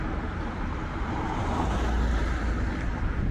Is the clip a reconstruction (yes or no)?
no